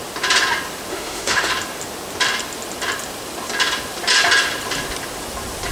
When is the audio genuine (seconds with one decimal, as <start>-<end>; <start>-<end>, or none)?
0.0-0.9; 1.5-5.7